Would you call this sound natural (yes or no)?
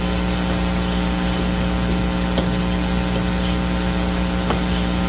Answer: yes